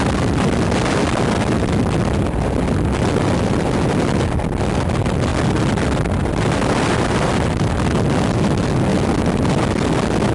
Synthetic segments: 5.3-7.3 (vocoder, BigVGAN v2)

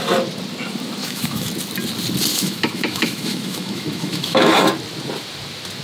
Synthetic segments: 1.0-1.5 (autoencoder, DAC-VAE); 2.3-4.5